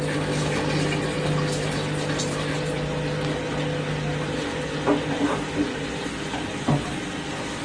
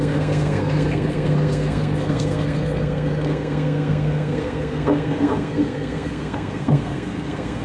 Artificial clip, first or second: second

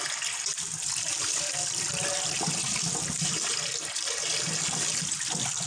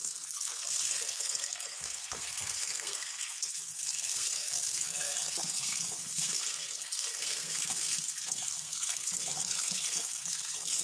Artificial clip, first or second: second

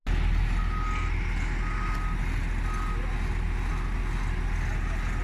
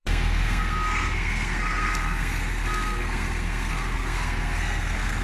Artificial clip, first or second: second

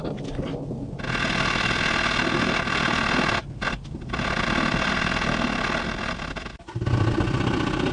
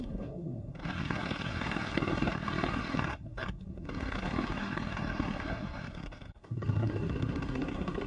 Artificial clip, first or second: second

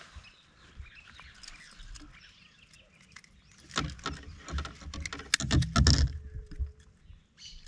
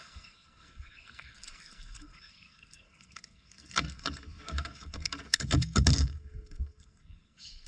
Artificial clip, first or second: second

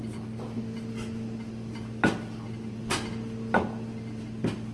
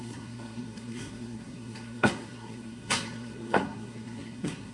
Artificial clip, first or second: second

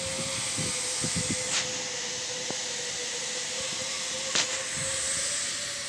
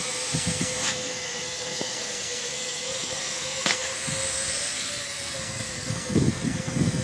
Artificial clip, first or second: second